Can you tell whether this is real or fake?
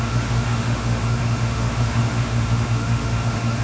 fake